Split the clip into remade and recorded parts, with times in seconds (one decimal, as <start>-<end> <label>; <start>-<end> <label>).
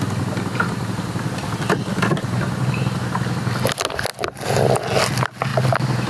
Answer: 0.0-6.1 recorded